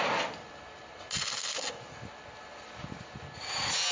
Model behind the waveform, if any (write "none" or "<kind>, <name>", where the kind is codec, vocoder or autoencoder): none